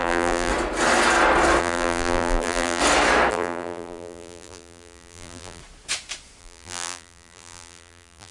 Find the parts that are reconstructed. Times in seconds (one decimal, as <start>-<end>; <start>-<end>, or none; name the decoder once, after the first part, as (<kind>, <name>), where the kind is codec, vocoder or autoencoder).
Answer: 0.0-0.5 (vocoder, BigVGAN v2); 1.6-2.8; 3.3-5.6; 6.4-8.3